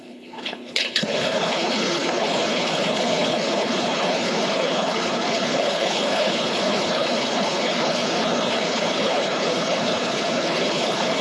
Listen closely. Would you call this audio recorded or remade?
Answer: remade